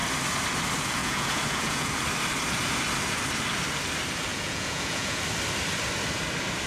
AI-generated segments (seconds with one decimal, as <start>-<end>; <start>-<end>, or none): 1.0-1.9; 4.3-5.2